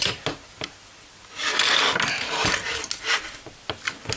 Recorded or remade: recorded